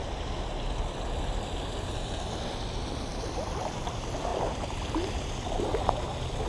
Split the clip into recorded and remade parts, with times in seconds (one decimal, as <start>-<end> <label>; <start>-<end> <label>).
0.0-6.5 recorded